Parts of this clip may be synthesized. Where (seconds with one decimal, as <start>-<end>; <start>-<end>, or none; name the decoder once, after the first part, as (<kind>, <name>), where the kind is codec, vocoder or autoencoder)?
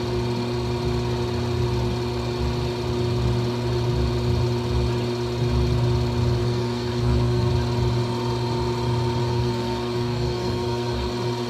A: 6.4-7.5 (codec, SNAC); 9.2-11.1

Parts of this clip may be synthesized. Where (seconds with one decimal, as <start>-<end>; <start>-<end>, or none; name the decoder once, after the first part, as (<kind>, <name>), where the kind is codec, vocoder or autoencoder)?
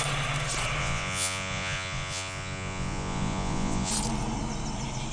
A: 0.8-3.9 (vocoder, Vocos)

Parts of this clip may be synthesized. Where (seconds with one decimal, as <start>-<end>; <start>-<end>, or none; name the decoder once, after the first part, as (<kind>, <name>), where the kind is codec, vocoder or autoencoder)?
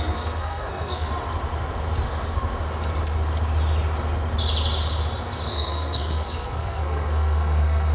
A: 0.0-1.1 (codec, SNAC); 5.5-7.9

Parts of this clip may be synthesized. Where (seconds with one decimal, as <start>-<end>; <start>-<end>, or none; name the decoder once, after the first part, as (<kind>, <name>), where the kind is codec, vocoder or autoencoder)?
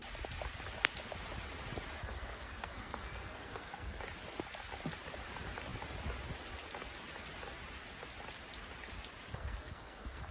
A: 2.0-4.0 (codec, SNAC); 9.3-10.3